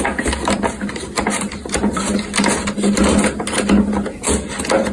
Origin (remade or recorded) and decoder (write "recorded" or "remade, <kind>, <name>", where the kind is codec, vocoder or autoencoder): recorded